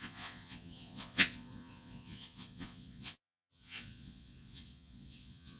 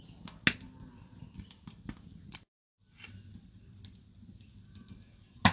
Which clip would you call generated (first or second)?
first